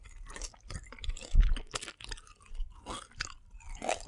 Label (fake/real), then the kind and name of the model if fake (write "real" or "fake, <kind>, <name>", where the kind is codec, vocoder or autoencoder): real